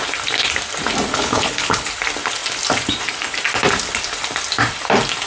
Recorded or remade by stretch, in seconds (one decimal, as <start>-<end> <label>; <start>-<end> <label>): 0.0-1.1 recorded; 1.1-1.9 remade; 1.9-5.3 recorded